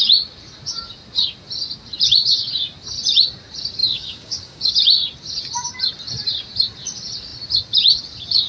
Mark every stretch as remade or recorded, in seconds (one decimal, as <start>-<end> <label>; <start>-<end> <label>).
0.0-3.8 recorded; 3.8-4.7 remade; 4.7-8.5 recorded